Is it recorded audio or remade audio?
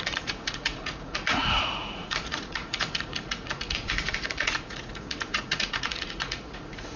remade